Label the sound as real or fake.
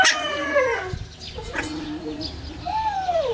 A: real